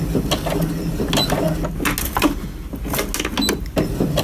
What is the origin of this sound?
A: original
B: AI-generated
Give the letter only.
A